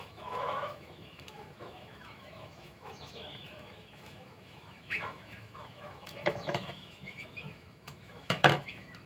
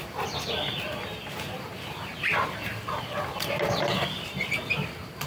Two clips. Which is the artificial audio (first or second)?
first